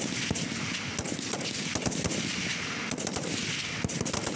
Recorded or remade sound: recorded